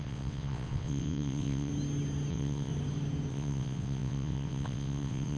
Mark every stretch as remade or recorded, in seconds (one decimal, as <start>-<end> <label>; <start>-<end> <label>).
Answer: 0.0-1.7 remade; 1.7-2.3 recorded; 2.3-2.7 remade; 2.7-3.3 recorded; 3.3-5.4 remade